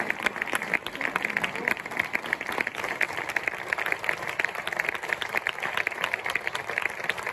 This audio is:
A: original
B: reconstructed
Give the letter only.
A